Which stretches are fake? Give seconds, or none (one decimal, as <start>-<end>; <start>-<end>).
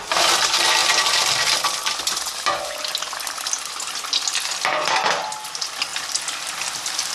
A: none